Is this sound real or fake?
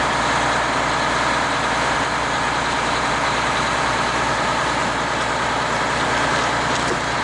real